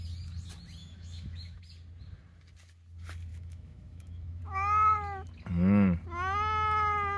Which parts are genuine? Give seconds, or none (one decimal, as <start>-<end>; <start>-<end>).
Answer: 0.0-0.8; 1.6-3.3; 4.4-7.2